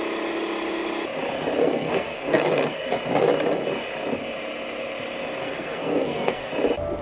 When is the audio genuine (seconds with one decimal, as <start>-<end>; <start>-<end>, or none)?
0.0-1.6; 2.8-5.4; 6.5-7.0